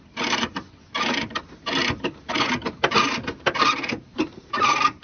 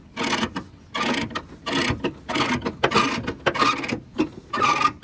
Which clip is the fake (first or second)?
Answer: first